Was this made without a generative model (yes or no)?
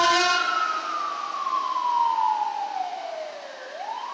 yes